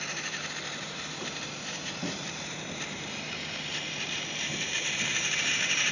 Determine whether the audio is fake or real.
fake